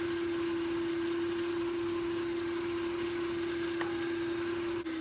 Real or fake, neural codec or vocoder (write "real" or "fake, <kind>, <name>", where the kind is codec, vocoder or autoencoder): real